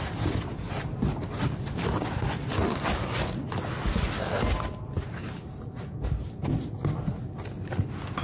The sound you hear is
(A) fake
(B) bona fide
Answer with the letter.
B